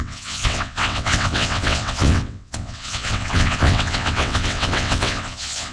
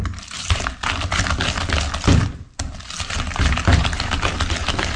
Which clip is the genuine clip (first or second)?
second